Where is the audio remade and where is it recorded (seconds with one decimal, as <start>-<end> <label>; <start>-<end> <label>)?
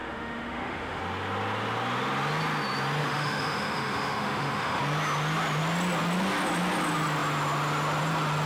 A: 0.0-1.0 remade; 1.0-3.0 recorded; 3.0-4.8 remade; 4.8-8.5 recorded